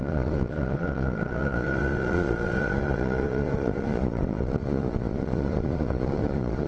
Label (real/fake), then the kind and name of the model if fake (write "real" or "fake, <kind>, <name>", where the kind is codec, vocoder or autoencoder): fake, vocoder, Vocos